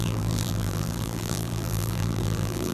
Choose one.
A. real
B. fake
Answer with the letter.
B